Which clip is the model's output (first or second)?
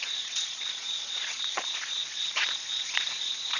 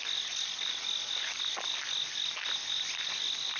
first